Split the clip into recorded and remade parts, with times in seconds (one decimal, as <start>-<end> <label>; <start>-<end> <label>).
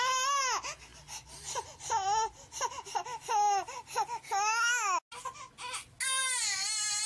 0.0-7.1 recorded